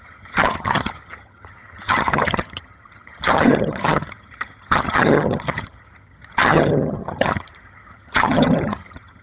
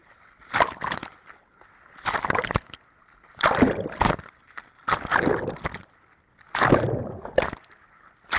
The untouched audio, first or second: second